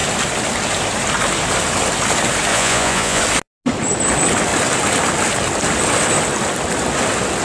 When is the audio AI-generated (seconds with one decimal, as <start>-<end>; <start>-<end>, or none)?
2.5-3.2